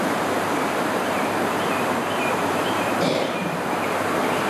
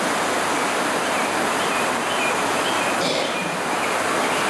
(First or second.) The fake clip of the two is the first